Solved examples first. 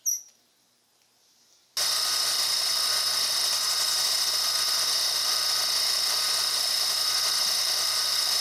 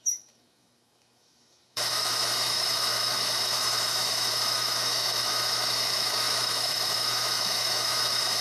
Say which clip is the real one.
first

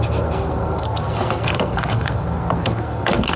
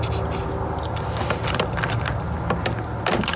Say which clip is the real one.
second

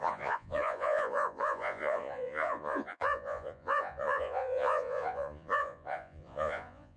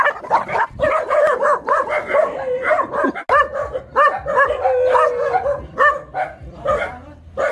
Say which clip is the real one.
second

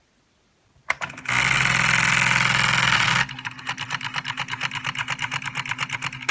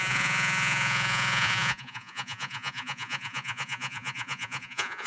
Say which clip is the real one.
first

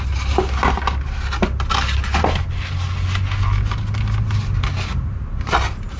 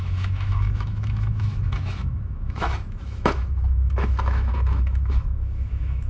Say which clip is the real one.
first